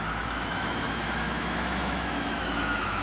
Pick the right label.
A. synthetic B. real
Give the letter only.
A